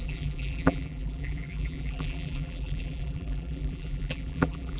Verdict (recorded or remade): remade